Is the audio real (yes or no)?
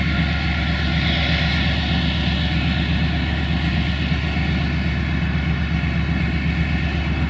yes